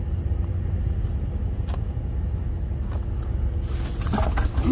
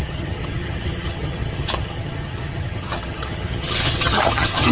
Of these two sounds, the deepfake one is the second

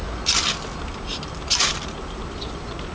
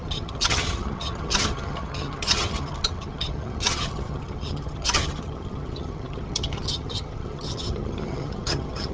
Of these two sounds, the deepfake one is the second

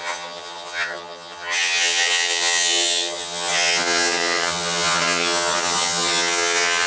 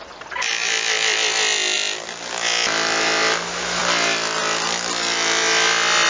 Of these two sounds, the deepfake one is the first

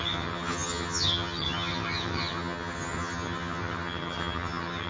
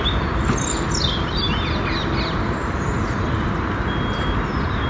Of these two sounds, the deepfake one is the first